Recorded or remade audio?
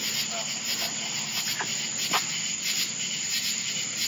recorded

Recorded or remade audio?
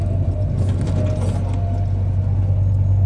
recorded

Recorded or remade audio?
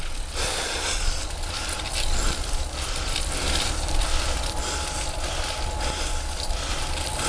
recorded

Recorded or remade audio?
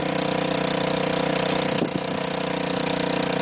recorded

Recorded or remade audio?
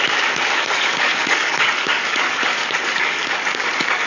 remade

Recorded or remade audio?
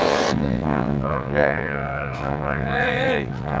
remade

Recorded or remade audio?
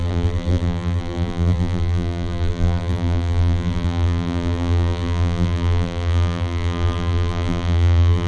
remade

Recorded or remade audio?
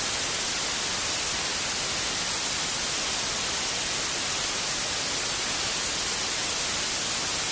recorded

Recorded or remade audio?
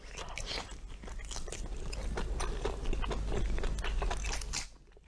recorded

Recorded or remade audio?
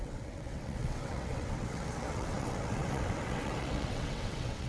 remade